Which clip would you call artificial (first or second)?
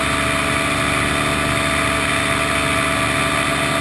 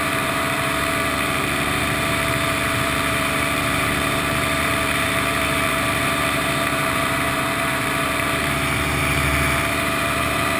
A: second